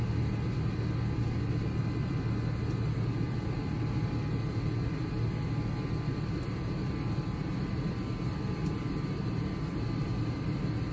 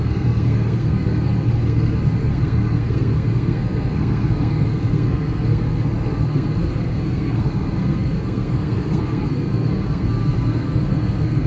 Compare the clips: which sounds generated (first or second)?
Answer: second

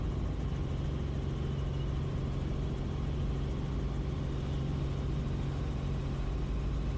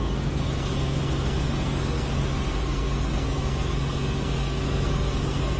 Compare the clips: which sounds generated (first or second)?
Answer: second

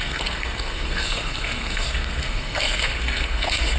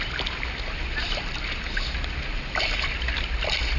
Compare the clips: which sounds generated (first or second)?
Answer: first